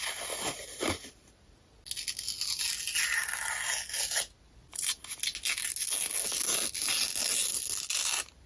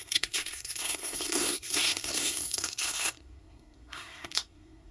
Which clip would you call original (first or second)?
first